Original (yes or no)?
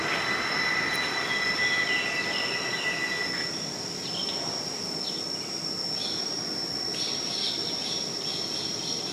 yes